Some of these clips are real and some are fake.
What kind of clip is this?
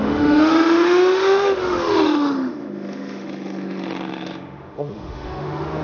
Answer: fake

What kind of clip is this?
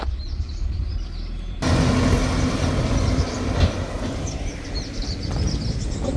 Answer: real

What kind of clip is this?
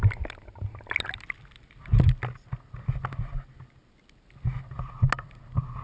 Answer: real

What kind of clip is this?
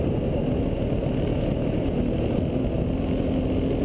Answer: real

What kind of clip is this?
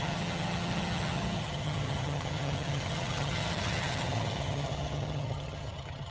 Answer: fake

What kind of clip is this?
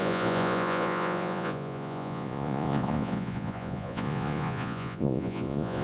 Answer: fake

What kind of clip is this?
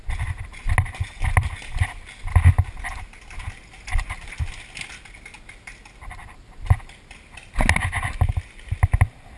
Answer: real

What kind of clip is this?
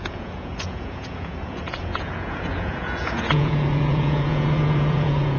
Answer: fake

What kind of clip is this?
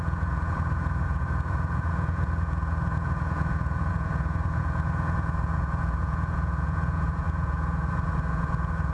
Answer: fake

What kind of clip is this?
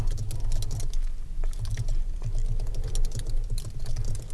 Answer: real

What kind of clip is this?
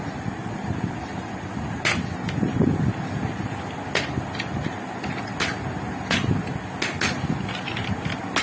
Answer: real